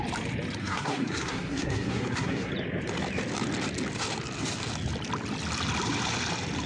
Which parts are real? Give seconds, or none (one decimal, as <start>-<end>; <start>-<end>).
0.0-0.6; 2.5-6.7